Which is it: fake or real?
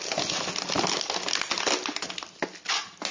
real